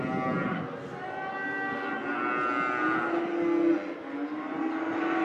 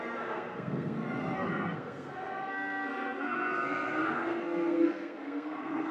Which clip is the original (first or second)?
first